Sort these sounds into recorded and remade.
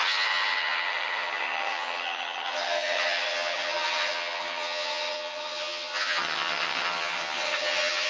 remade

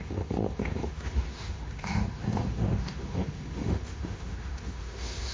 remade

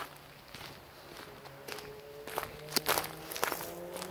recorded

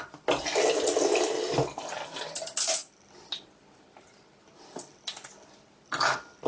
recorded